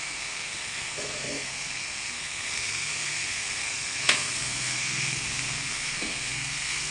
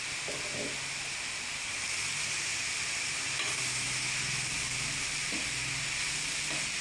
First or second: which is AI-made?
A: first